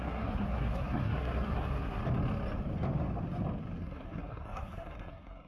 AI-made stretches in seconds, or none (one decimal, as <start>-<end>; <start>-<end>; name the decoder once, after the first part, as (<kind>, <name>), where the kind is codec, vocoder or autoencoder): 0.0-2.0 (codec, SNAC); 3.8-5.5